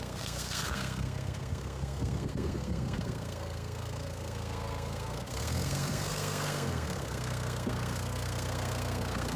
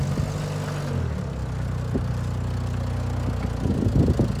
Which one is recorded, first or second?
second